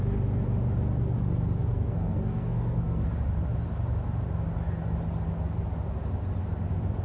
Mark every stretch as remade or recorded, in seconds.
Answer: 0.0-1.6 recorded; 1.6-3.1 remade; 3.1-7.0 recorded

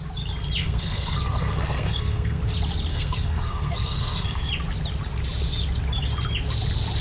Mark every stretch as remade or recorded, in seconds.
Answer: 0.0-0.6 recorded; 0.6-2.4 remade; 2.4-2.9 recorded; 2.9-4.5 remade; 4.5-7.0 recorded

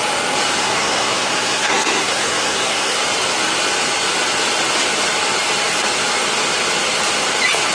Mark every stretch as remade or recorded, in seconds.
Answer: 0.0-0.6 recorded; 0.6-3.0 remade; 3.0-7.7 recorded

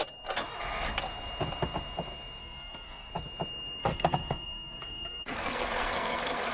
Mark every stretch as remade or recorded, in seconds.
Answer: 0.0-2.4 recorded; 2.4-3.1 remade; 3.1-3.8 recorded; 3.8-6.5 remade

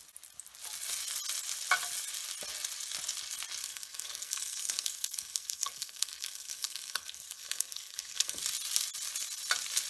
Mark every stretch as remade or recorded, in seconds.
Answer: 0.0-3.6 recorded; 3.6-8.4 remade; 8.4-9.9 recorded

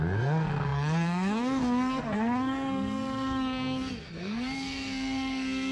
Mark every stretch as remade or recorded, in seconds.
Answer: 0.0-5.7 remade